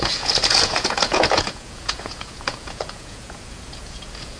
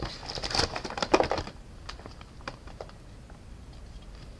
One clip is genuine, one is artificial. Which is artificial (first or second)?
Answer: first